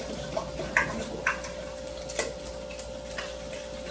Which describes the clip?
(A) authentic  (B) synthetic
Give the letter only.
A